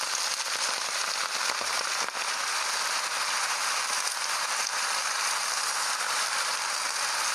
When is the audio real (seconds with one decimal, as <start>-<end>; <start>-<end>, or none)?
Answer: 0.0-7.3